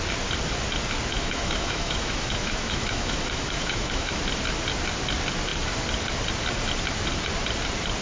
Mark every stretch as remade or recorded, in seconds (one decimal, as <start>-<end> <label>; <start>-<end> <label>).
0.0-1.1 recorded; 1.1-4.2 remade; 4.2-8.0 recorded